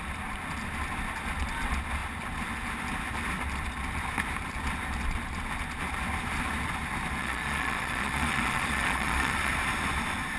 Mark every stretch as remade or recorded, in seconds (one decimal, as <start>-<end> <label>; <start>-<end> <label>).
0.0-7.2 recorded; 7.2-9.5 remade; 9.5-10.4 recorded